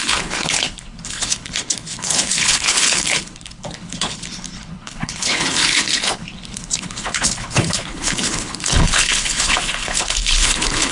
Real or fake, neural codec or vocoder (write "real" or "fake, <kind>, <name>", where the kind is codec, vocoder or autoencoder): fake, codec, HILCodec